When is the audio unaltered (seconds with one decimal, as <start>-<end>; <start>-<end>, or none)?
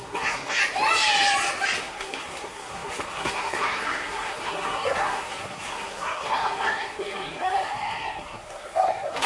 0.6-1.8